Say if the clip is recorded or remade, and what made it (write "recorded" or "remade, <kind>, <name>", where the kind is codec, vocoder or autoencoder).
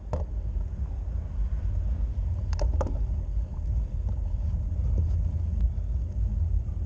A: recorded